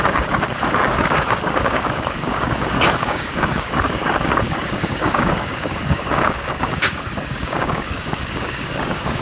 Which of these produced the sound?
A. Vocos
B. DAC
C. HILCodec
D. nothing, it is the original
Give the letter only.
B